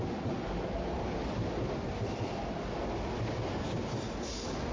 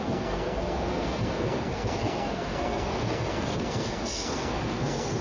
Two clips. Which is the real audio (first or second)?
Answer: first